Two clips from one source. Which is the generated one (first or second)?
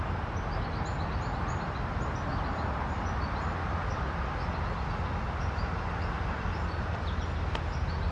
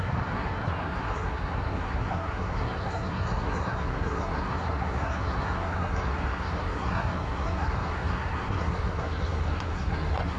second